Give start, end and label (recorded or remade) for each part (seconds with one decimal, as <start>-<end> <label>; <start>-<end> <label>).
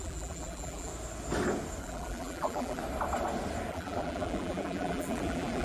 0.0-0.9 remade; 0.9-1.8 recorded; 1.8-2.8 remade; 2.8-3.7 recorded; 3.7-5.6 remade